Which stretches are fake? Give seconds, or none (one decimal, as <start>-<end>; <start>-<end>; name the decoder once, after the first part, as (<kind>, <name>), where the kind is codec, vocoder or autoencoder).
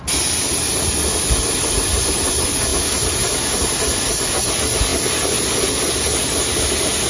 none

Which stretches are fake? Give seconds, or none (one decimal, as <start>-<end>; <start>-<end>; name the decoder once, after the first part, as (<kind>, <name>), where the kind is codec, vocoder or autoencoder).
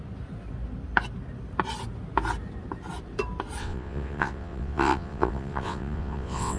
3.6-6.6 (vocoder, WaveNeXt)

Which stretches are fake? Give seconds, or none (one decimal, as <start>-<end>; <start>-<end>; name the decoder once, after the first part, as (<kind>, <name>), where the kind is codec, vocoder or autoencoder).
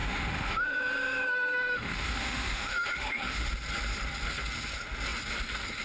0.0-3.5 (autoencoder, DAC-VAE)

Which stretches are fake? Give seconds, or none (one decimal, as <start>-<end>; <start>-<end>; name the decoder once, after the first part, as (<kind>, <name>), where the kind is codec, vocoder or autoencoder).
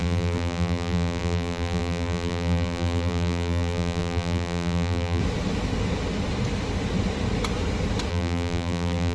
0.0-5.2 (vocoder, BigVGAN v2); 8.1-9.1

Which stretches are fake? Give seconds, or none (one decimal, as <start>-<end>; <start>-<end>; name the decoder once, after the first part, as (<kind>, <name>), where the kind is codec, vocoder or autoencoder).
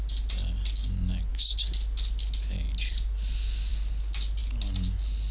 none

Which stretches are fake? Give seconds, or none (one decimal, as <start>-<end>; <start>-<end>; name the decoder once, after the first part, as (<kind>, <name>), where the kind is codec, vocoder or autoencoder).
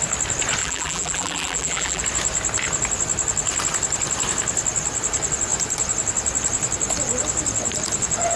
0.6-2.0 (vocoder, BigVGAN v2)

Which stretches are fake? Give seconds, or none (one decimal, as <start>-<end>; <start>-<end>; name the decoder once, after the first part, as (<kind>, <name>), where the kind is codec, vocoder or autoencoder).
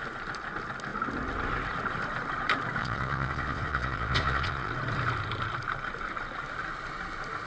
2.8-4.7 (vocoder, Vocos)